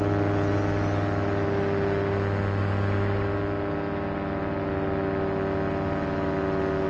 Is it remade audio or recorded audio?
recorded